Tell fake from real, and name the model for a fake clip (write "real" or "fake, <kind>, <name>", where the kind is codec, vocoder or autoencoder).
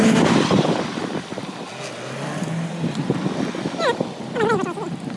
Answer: real